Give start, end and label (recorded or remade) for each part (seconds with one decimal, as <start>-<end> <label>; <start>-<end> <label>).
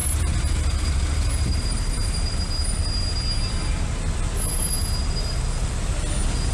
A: 0.0-2.2 remade; 2.2-6.5 recorded